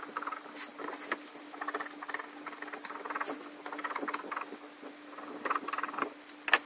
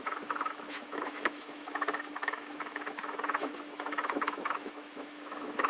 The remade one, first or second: second